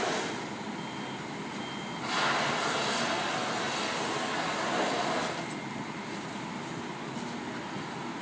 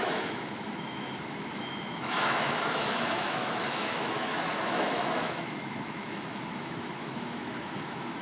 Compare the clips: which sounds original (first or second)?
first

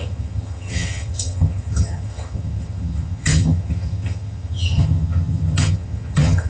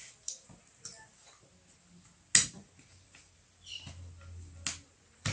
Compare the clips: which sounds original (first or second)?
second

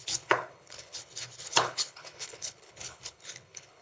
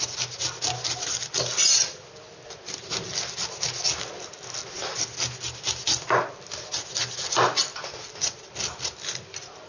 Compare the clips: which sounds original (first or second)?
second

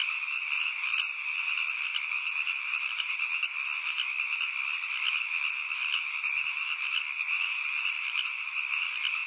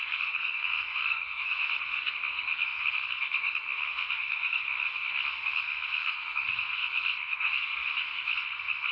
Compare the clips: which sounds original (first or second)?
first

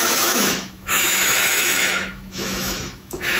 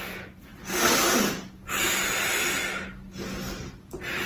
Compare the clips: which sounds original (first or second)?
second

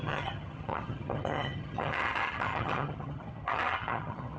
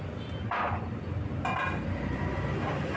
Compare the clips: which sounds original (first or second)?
second